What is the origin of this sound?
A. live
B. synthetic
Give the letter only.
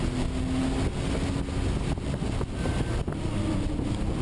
A